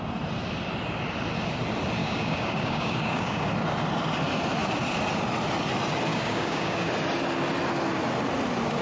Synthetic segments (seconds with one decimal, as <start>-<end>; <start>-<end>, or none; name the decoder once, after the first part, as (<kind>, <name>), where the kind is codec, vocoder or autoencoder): 2.0-3.5 (codec, DAC); 6.1-6.9